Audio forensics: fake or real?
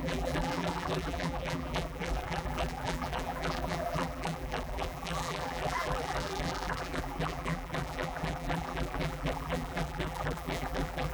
fake